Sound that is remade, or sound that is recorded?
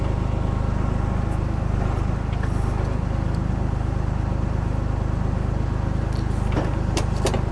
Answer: recorded